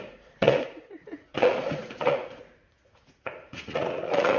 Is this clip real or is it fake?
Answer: fake